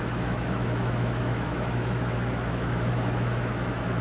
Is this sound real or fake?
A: fake